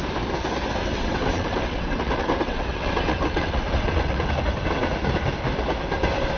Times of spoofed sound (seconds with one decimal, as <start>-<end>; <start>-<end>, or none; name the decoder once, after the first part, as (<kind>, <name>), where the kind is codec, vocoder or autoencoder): 0.8-4.3 (vocoder, WaveNeXt)